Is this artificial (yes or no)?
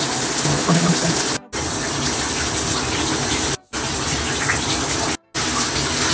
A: no